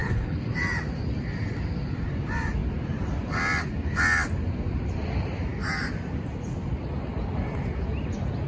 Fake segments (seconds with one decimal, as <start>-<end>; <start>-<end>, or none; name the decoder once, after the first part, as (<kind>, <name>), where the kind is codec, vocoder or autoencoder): 0.0-0.5 (codec, HILCodec)